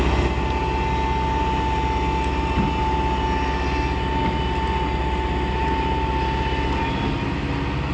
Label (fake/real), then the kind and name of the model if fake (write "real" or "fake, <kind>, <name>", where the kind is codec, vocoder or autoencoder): real